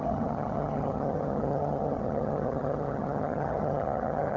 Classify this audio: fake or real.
fake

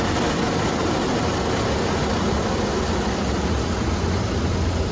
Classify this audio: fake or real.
real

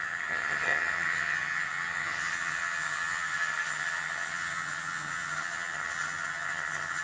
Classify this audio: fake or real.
fake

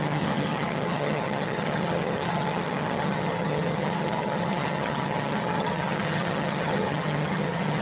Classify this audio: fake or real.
fake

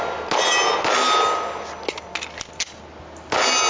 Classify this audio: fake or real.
real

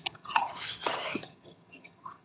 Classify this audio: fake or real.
fake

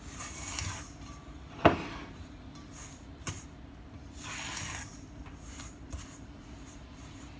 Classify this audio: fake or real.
real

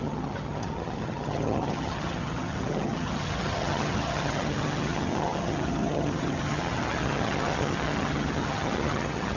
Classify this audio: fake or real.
fake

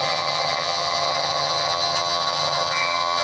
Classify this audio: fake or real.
fake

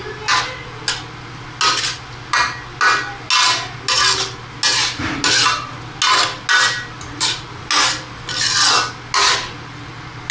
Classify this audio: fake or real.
real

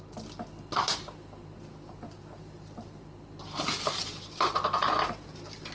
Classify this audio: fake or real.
real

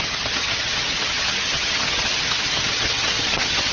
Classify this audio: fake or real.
fake